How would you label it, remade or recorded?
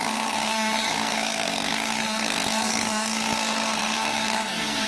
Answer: remade